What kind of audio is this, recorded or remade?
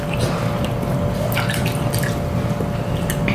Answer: recorded